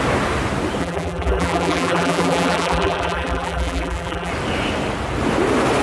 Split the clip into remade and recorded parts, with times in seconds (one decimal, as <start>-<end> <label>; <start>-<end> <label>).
0.0-0.8 recorded; 0.8-4.3 remade; 4.3-5.8 recorded

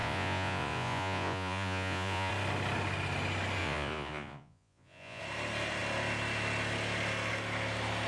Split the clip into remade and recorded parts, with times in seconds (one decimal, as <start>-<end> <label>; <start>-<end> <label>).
0.0-2.3 remade; 2.3-3.6 recorded; 3.6-5.2 remade; 5.2-8.1 recorded